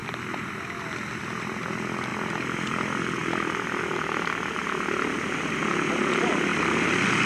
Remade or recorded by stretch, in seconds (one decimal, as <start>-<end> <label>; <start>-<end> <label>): 0.0-7.3 recorded

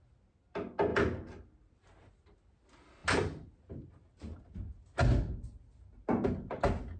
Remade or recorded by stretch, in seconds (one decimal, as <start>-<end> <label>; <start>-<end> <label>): 0.0-7.0 recorded